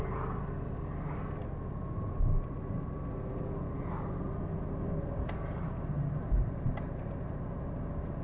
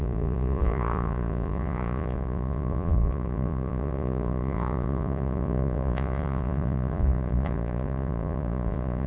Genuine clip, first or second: first